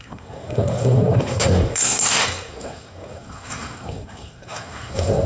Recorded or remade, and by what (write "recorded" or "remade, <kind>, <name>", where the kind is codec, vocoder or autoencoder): remade, codec, SNAC